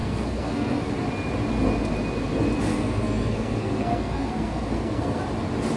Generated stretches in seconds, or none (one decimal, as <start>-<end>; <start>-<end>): 0.0-0.9; 2.7-5.2